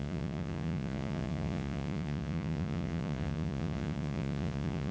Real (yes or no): no